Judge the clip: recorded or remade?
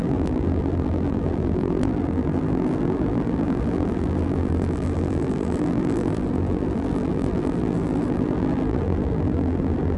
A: remade